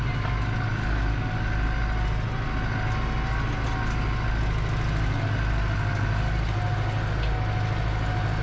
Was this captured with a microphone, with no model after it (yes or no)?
yes